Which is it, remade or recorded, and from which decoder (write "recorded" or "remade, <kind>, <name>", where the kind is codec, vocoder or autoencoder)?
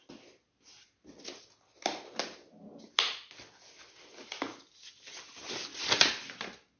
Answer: recorded